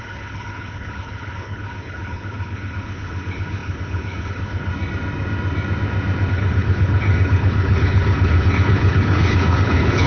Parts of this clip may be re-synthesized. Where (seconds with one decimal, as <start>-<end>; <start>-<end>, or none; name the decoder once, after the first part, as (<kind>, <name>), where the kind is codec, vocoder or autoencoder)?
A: 0.0-4.7 (codec, HILCodec); 6.3-10.1